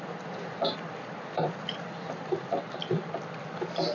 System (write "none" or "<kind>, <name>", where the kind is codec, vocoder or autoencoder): vocoder, BigVGAN v2